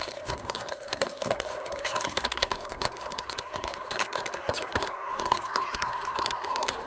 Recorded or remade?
remade